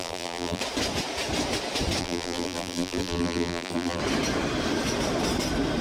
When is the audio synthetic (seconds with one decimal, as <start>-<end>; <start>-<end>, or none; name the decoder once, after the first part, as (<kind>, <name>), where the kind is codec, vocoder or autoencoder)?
0.0-0.6 (vocoder, BigVGAN v2); 2.0-4.0